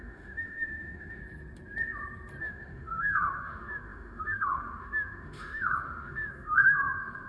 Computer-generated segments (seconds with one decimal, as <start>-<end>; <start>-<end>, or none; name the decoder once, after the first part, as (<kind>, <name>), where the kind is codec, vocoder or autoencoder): 0.0-1.2 (autoencoder, DAC-VAE); 2.4-7.3